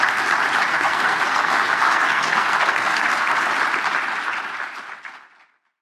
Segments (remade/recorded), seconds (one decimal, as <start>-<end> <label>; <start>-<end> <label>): 0.0-0.7 recorded; 0.7-3.5 remade; 3.5-5.8 recorded